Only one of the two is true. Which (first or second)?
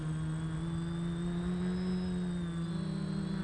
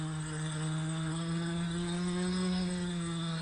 first